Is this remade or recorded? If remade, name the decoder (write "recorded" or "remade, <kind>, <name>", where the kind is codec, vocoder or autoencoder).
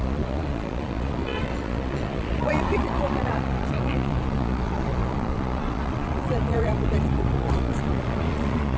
remade, vocoder, Vocos